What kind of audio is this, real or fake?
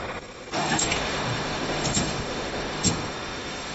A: fake